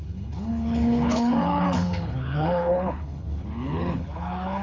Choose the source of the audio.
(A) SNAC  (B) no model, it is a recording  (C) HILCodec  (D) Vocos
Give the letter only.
C